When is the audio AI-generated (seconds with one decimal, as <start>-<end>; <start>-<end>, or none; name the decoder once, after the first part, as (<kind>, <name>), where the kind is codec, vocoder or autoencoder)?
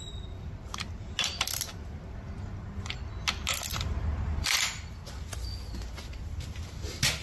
3.7-4.5 (vocoder, BigVGAN v2)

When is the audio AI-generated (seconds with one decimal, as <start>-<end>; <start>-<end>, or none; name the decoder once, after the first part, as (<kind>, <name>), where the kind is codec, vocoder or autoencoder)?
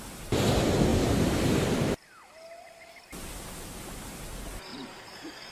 0.9-2.3 (vocoder, BigVGAN v2); 4.7-5.5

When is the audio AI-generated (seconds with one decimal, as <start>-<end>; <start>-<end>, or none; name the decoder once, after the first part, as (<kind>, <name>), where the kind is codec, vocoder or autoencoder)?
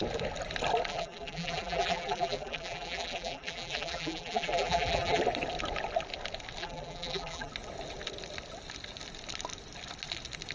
0.9-5.2 (vocoder, BigVGAN v2); 6.6-7.5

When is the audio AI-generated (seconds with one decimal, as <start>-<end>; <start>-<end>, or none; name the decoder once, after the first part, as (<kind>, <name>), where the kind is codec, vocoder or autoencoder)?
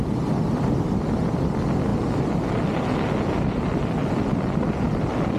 none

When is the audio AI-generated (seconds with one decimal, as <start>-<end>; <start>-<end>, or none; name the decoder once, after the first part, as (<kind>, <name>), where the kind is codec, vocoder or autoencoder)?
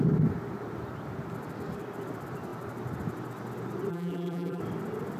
3.9-4.6 (vocoder, BigVGAN v2)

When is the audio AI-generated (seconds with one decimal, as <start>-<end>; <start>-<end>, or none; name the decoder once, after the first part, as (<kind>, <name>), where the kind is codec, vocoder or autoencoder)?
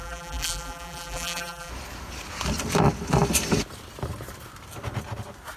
0.0-1.7 (vocoder, BigVGAN v2)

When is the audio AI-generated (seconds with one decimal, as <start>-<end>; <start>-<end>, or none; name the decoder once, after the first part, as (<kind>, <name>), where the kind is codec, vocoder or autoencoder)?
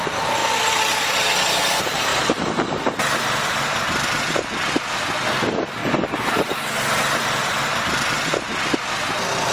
none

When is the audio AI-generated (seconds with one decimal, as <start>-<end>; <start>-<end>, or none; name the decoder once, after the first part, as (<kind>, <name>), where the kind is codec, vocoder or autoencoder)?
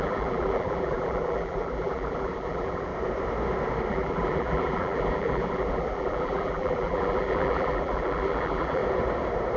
0.0-2.9 (vocoder, BigVGAN v2); 3.9-8.8